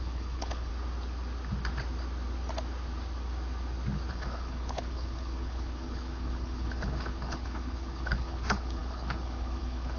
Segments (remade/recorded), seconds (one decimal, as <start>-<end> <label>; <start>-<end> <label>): 0.0-0.7 remade; 0.7-4.1 recorded; 4.1-10.0 remade